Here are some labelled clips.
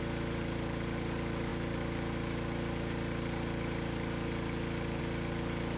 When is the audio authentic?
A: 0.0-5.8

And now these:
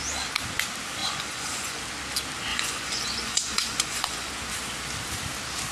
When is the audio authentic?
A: 0.0-1.0; 1.8-2.5; 4.3-5.7

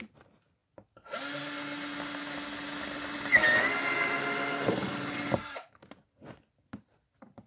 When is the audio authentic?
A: 0.0-7.5

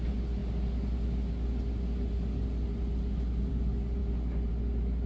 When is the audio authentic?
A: 0.0-5.1

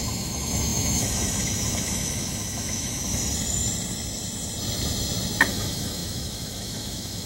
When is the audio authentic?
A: 3.0-5.5

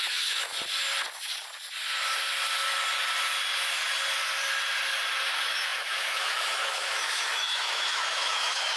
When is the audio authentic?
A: 0.5-5.3